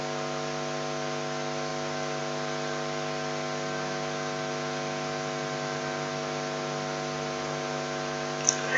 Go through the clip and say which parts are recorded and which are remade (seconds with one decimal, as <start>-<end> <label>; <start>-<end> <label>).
0.0-8.8 recorded